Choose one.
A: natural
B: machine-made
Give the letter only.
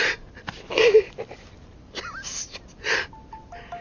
A